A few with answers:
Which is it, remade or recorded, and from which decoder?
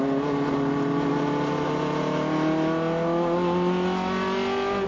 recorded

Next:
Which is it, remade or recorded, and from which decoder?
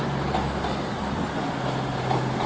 recorded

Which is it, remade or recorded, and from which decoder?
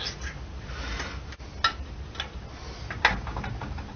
recorded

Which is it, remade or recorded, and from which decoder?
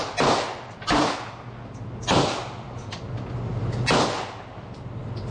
recorded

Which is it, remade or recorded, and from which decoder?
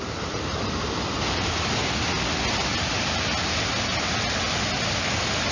recorded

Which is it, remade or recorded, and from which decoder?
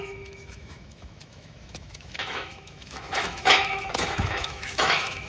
remade, autoencoder, DAC-VAE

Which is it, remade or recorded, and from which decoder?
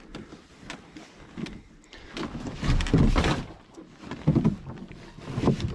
recorded